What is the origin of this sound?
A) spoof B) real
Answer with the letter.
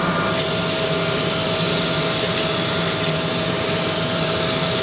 B